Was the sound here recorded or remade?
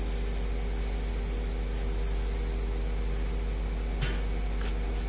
recorded